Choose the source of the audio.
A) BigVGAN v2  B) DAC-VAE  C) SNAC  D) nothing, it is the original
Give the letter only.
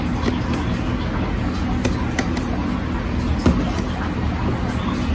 D